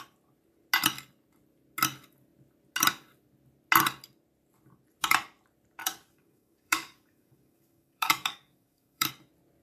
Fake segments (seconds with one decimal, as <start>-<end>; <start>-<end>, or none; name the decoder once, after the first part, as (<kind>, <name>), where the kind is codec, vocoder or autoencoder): 5.8-9.1 (codec, DAC)